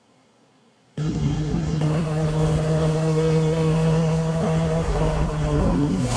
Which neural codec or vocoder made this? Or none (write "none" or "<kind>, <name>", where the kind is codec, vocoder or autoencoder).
codec, SNAC